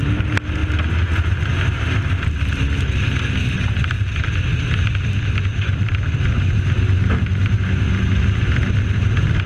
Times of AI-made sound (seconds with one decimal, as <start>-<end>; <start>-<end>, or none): none